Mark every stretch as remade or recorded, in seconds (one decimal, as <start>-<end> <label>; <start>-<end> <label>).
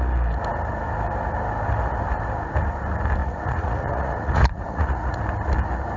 0.0-3.2 recorded; 3.2-5.2 remade; 5.2-6.0 recorded